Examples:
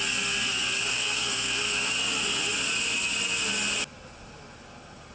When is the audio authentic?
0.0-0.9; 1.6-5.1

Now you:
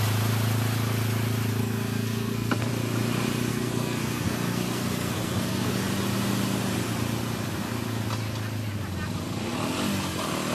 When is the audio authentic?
0.0-1.6; 2.7-3.5; 5.7-10.5

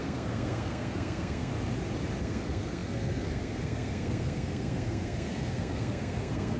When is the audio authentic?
1.5-2.2